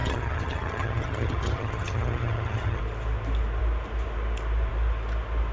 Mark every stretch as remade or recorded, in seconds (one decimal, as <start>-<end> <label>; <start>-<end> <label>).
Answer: 0.0-2.8 remade; 2.8-5.5 recorded